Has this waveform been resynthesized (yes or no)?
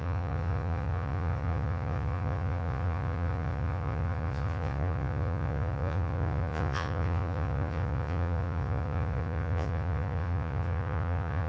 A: yes